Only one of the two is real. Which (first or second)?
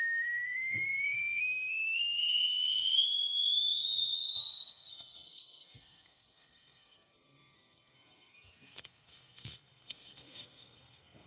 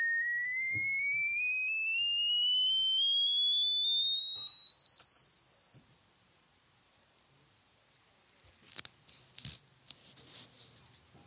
second